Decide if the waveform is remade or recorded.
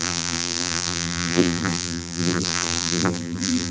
remade